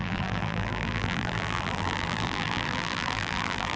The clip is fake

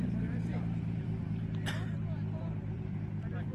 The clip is fake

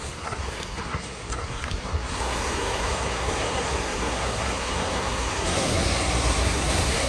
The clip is fake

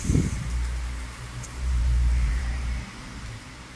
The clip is fake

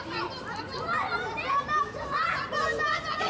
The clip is real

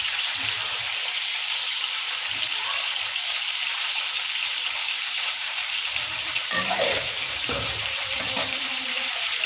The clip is fake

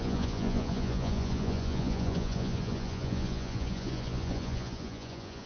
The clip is fake